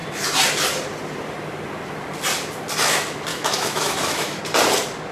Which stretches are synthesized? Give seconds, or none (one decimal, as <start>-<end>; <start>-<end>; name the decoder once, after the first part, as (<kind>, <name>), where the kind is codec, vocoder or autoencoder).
3.3-4.4 (autoencoder, DAC-VAE)